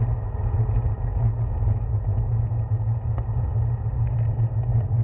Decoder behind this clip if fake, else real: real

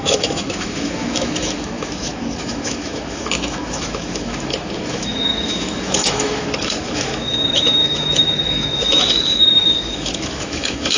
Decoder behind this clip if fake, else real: fake, autoencoder, DAC-VAE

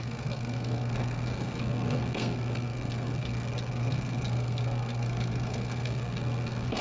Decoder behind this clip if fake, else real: fake, codec, SNAC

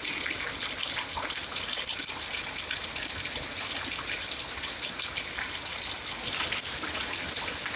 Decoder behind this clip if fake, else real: real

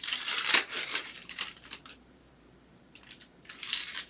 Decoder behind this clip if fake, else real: fake, vocoder, BigVGAN v2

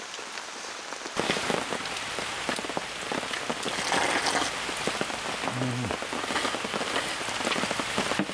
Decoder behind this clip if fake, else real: real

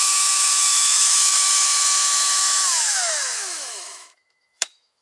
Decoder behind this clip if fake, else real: fake, autoencoder, DAC-VAE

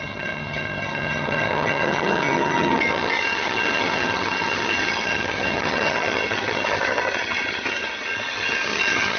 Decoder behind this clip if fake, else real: fake, vocoder, HiFi-GAN